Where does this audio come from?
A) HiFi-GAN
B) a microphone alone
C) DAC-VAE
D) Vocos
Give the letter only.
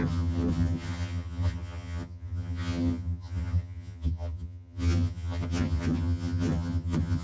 A